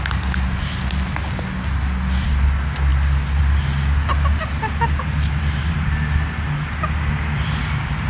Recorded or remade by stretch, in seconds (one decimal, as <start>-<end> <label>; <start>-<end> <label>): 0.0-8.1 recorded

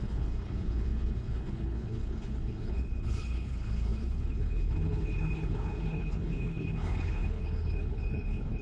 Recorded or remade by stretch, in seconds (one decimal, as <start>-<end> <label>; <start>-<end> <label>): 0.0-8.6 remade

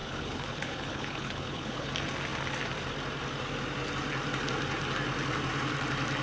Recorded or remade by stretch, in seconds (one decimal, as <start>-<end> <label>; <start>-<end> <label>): 0.0-1.9 remade; 1.9-6.2 recorded

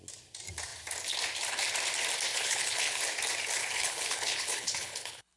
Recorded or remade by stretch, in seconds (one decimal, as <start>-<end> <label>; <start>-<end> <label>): 0.0-2.3 recorded; 2.3-3.0 remade; 3.0-3.6 recorded; 3.6-5.4 remade

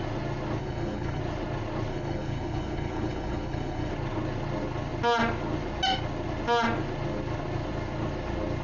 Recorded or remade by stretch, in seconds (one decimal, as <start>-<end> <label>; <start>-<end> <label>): 0.0-0.6 recorded; 0.6-1.2 remade; 1.2-1.9 recorded; 1.9-3.9 remade; 3.9-8.6 recorded